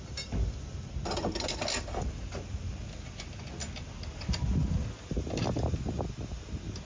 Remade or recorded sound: recorded